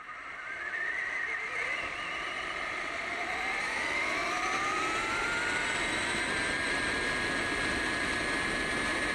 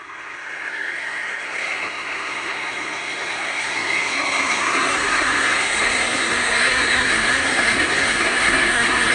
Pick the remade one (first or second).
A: second